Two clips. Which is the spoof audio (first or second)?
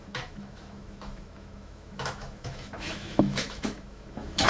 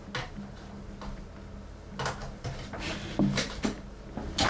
first